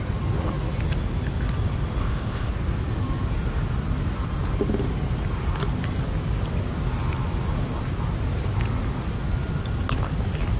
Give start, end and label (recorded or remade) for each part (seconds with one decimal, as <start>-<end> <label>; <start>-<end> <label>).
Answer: 0.0-2.0 recorded; 2.0-2.5 remade; 2.5-10.6 recorded